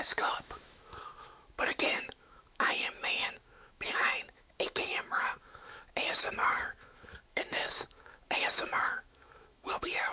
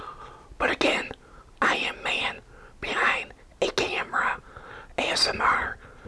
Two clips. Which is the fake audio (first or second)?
first